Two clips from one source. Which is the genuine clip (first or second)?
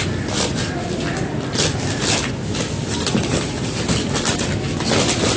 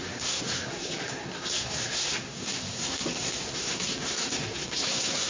first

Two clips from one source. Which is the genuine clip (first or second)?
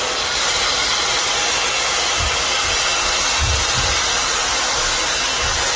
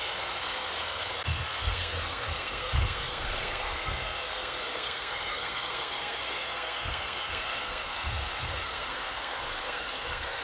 first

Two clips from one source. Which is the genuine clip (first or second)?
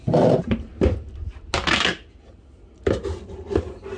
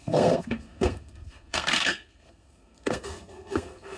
first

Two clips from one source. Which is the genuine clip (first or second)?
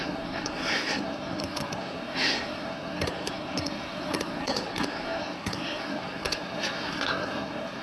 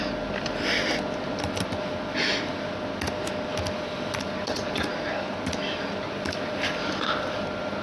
second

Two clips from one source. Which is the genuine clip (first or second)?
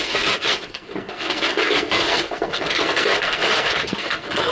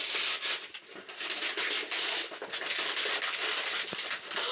second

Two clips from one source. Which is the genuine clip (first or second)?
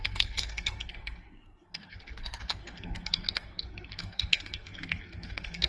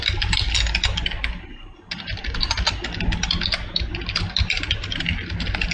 second